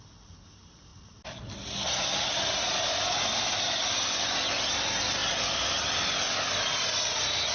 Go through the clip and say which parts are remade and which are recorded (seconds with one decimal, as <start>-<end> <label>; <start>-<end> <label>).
0.0-7.5 recorded